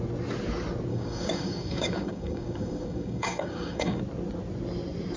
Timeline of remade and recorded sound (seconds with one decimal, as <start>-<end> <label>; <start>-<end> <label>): 0.0-0.9 recorded; 0.9-4.0 remade; 4.0-5.2 recorded